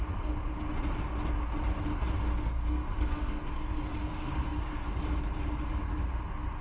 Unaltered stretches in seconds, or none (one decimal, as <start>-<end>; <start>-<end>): 0.0-2.4; 4.9-6.6